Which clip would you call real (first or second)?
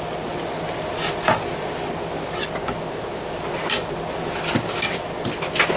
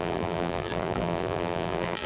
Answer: first